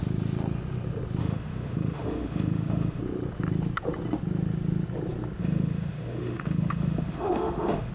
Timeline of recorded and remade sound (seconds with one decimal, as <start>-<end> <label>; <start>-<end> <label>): 0.0-1.2 recorded; 1.2-3.0 remade; 3.0-5.4 recorded; 5.4-7.9 remade